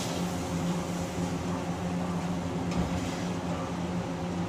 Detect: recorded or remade recorded